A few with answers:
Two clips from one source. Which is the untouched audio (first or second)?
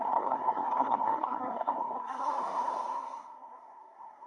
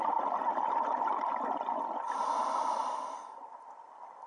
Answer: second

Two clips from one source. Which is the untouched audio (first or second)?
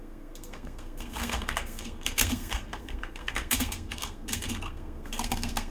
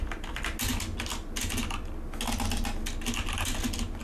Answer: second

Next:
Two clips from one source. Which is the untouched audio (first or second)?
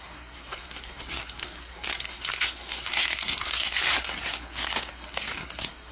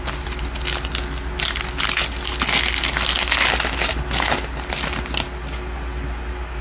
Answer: second